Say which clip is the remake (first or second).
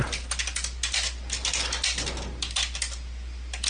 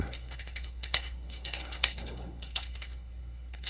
second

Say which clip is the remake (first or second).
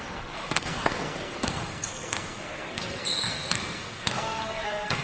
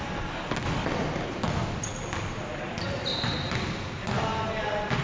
first